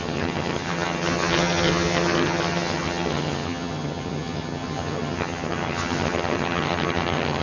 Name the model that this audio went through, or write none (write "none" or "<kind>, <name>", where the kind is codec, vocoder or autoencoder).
vocoder, HiFi-GAN